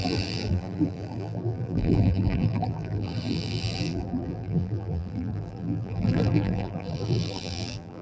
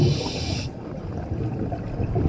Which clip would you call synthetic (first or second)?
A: first